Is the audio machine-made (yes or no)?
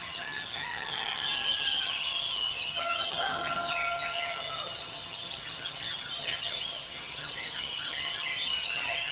yes